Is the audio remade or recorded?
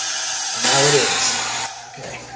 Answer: recorded